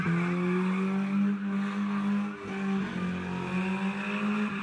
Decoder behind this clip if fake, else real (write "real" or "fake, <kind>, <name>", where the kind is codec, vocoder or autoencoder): real